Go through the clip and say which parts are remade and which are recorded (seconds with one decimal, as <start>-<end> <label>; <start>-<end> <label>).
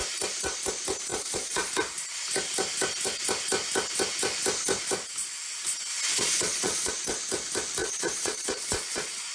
0.0-1.1 recorded; 1.1-1.7 remade; 1.7-6.1 recorded; 6.1-6.9 remade; 6.9-7.8 recorded; 7.8-9.3 remade